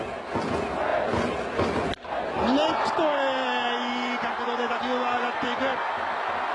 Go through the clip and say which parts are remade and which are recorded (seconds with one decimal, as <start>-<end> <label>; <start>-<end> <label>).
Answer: 0.0-6.5 recorded